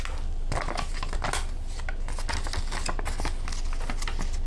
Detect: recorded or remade recorded